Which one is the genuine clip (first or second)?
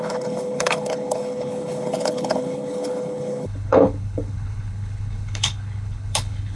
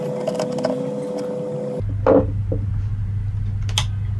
second